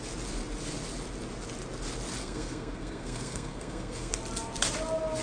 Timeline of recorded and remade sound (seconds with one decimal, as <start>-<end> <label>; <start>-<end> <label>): 0.0-2.2 recorded; 2.2-4.1 remade; 4.1-5.2 recorded